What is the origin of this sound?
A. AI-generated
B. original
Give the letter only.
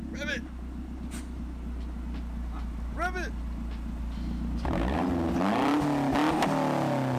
B